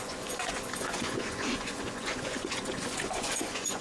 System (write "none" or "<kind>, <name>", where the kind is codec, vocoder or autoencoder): vocoder, Vocos